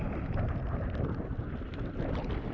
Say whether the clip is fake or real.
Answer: real